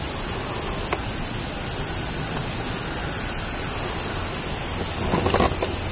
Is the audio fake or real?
real